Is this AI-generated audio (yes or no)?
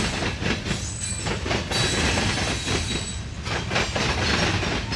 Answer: no